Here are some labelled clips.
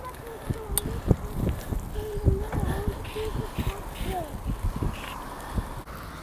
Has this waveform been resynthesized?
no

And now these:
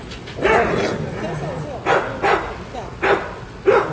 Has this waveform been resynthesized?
no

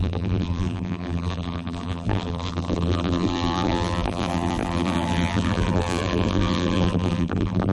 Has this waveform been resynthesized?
yes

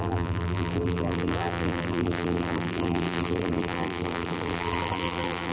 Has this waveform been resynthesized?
yes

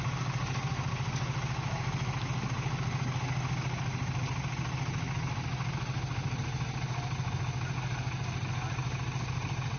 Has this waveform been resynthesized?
no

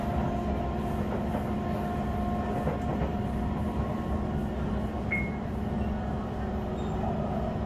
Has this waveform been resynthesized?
no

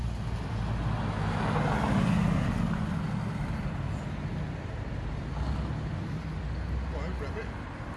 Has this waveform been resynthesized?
no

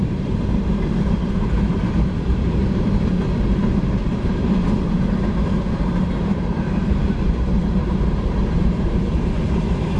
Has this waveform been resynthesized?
yes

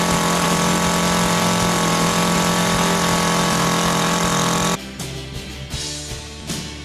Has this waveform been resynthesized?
no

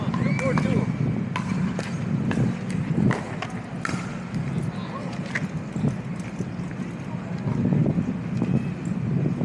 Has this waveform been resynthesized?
no